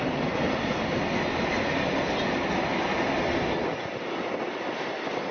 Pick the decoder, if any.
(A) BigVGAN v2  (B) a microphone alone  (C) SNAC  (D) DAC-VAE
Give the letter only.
B